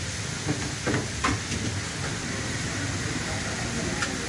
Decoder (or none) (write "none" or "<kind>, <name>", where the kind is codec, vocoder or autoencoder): none